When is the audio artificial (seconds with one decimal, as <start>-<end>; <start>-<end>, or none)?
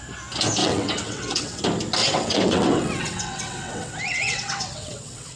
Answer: 0.6-1.6; 2.0-5.4